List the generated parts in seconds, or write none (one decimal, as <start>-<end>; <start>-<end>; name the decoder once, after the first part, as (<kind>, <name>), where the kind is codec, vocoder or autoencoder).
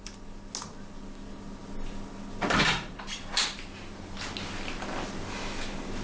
none